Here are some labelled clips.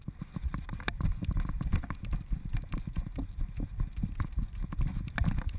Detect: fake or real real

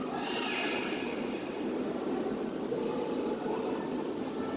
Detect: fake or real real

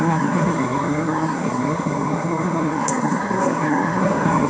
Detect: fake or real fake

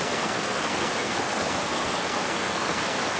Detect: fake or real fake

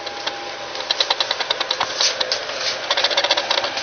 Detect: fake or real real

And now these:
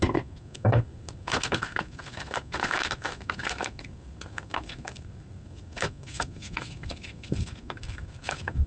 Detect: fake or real fake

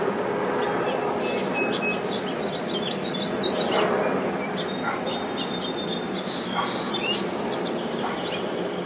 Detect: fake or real real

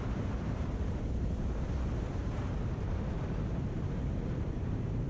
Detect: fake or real fake